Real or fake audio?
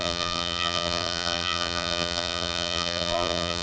fake